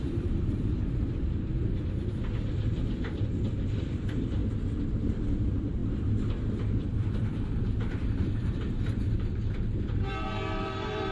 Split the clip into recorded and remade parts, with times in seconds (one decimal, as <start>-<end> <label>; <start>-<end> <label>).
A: 0.0-4.4 remade; 4.4-4.9 recorded; 4.9-11.1 remade